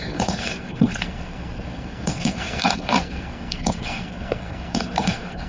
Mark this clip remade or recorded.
remade